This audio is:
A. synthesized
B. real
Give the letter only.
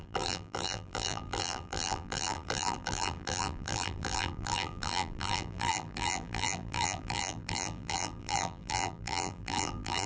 A